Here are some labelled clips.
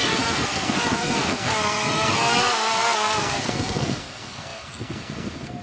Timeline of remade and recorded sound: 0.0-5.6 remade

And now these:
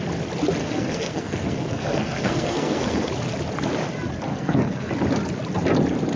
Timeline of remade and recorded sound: 0.0-0.6 recorded; 0.6-3.1 remade; 3.1-4.3 recorded; 4.3-4.9 remade; 4.9-6.2 recorded

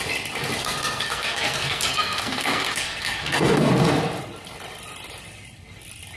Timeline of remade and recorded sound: 0.0-0.6 recorded; 0.6-3.7 remade; 3.7-6.2 recorded